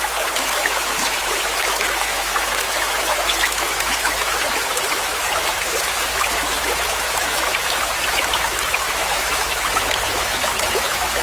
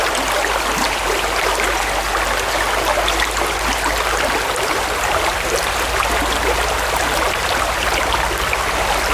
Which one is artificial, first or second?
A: first